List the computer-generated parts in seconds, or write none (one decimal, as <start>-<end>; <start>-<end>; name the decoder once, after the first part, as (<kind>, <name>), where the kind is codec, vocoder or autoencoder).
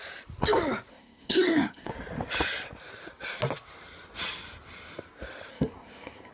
0.9-1.9 (codec, SNAC); 5.5-6.3